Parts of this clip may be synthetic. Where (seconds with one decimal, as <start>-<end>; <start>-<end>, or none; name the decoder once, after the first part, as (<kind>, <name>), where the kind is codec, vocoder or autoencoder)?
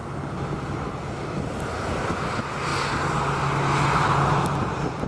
none